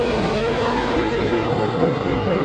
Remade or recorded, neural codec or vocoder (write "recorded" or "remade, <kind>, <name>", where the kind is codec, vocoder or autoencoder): remade, codec, SNAC